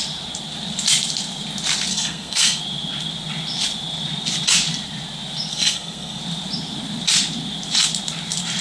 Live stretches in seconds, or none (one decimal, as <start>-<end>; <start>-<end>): 0.0-1.9; 2.6-5.5; 6.2-8.6